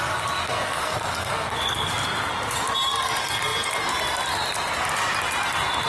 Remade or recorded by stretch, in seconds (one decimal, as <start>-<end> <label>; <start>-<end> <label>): 0.0-0.4 recorded; 0.4-1.9 remade; 1.9-5.9 recorded